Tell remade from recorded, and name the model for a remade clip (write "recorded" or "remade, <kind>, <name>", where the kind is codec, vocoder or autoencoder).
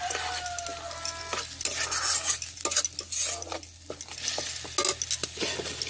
recorded